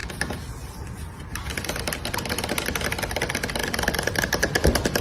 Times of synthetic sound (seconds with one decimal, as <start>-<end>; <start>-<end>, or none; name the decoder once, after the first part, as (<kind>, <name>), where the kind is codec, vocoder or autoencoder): none